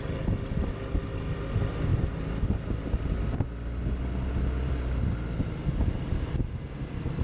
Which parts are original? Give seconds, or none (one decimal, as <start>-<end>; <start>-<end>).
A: 0.0-7.2